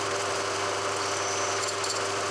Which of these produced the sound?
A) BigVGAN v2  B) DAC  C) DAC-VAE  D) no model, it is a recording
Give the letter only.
D